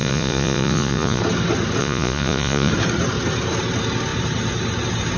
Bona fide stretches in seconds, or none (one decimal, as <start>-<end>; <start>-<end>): 1.2-1.8; 2.7-5.2